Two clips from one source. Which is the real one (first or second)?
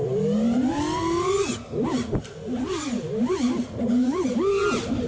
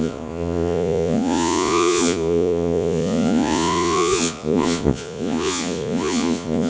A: first